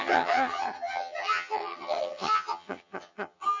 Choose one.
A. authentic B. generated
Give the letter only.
B